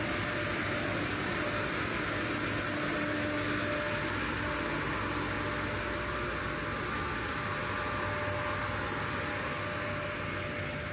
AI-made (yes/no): no